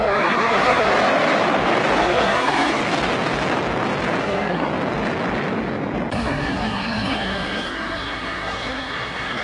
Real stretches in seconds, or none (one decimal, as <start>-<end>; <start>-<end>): 0.9-2.0; 2.8-4.2; 4.7-6.1